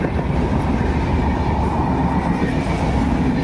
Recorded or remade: recorded